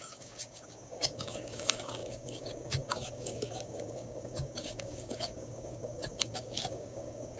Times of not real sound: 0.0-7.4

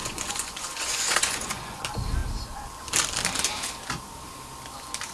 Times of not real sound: 0.0-1.8